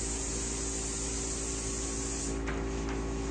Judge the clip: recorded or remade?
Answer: recorded